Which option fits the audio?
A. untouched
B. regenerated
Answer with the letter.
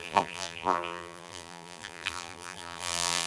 B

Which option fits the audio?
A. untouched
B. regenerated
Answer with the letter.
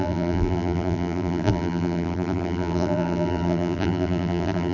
B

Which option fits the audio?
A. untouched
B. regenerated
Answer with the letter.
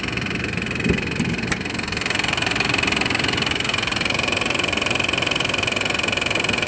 B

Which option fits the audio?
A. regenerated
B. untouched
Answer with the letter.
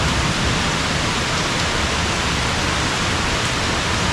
B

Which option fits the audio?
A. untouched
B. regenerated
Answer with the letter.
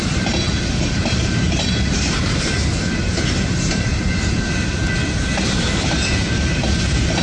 B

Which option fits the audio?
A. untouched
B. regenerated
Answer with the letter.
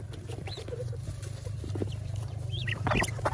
B